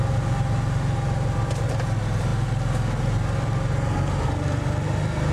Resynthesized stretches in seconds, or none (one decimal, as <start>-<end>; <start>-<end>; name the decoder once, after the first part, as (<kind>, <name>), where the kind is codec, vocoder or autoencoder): none